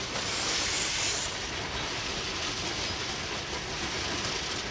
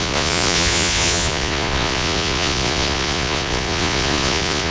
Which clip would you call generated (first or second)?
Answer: second